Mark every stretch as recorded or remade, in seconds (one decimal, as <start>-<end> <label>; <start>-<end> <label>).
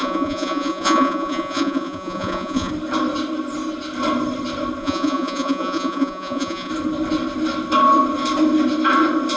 0.0-2.7 remade; 2.7-4.8 recorded; 4.8-6.7 remade; 6.7-9.4 recorded